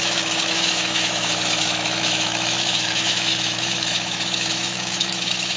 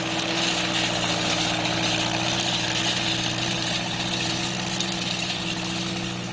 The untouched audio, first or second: second